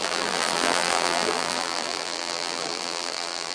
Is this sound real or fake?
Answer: fake